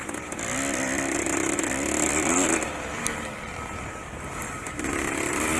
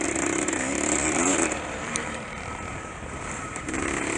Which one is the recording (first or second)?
first